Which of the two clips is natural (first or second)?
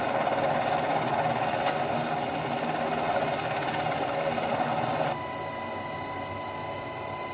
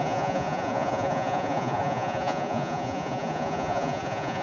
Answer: first